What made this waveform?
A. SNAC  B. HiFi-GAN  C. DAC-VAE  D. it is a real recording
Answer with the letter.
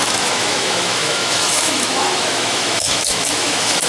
C